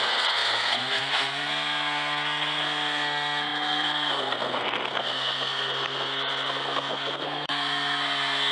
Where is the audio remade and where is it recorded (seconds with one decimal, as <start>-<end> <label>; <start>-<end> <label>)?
0.0-8.5 remade